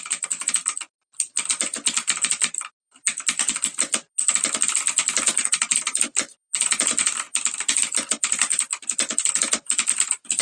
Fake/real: real